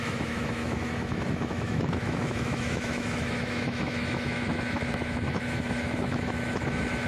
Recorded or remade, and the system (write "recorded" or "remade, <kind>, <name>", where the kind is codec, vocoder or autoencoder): remade, autoencoder, DAC-VAE